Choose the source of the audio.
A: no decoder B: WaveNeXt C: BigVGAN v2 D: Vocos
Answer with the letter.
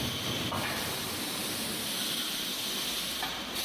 C